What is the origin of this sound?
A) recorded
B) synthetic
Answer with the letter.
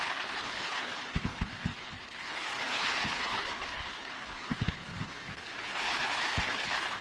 B